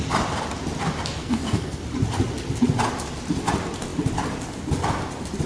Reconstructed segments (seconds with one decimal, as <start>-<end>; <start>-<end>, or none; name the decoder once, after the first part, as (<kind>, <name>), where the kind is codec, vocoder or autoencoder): 1.2-1.8 (codec, SNAC)